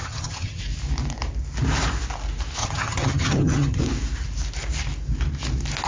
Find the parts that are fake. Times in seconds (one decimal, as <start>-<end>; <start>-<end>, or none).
0.0-0.6; 2.6-3.8

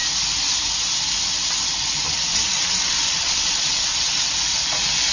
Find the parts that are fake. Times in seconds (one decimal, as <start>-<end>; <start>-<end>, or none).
2.3-4.1

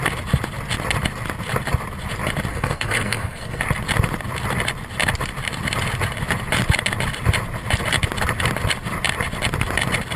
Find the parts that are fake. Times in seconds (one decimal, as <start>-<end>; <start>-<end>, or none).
2.5-3.6

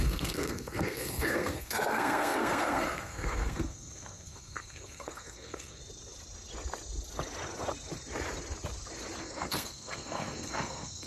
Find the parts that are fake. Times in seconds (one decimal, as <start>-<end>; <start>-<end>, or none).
0.0-5.8; 9.2-11.1

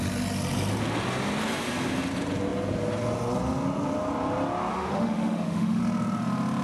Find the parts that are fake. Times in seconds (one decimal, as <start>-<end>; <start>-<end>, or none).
4.7-5.8

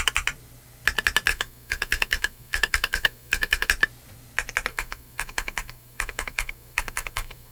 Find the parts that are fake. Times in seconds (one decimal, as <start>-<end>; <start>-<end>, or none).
1.3-3.7; 4.7-7.5